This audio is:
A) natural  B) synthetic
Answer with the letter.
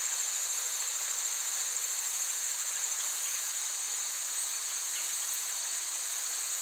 B